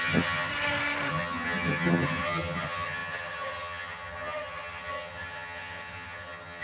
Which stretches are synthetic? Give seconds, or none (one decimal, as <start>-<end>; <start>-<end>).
0.0-0.5; 1.1-6.6